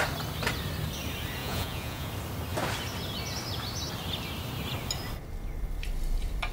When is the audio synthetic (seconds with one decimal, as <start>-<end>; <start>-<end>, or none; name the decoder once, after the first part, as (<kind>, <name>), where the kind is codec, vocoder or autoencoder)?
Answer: 1.4-2.1 (vocoder, Vocos)